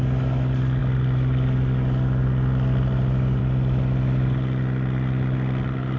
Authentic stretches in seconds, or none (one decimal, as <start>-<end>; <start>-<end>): 0.0-6.0